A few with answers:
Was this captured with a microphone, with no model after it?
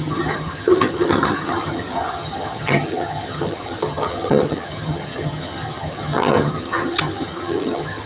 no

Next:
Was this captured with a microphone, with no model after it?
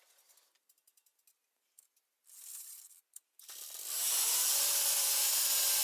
no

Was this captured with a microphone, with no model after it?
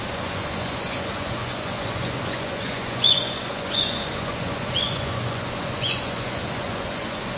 no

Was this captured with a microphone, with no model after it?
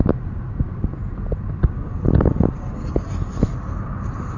yes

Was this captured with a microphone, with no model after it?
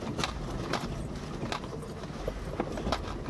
yes